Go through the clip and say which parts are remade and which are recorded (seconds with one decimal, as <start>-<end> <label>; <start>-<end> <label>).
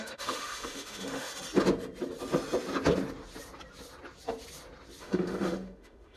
0.0-1.3 remade; 1.3-5.0 recorded; 5.0-6.2 remade